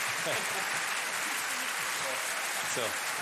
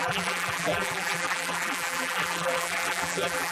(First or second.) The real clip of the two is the first